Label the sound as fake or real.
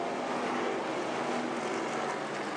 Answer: real